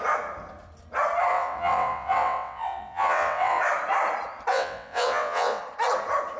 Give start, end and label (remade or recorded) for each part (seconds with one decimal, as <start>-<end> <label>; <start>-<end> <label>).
0.0-1.3 recorded; 1.3-3.6 remade; 3.6-4.5 recorded; 4.5-5.6 remade; 5.6-6.4 recorded